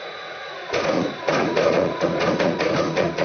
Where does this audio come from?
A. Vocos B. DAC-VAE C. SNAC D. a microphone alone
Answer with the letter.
A